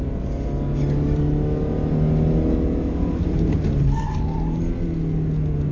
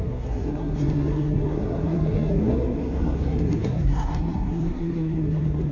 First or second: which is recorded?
first